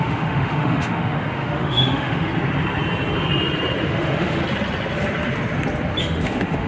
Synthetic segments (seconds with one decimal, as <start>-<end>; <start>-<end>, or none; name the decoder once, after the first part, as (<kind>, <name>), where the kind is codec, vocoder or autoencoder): 0.0-2.3 (autoencoder, DAC-VAE); 3.8-4.4; 6.0-6.7